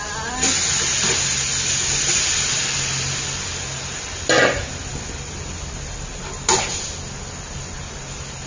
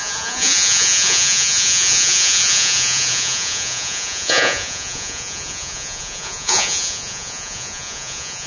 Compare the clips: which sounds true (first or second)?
first